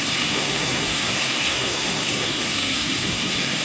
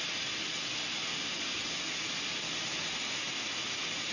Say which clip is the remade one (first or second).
first